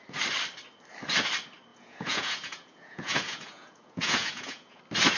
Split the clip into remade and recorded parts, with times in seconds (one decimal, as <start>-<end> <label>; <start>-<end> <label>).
0.0-1.7 recorded; 1.7-4.8 remade; 4.8-5.2 recorded